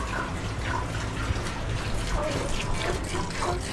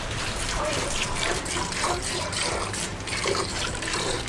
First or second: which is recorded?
first